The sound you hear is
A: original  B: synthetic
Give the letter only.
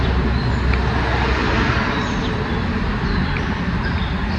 A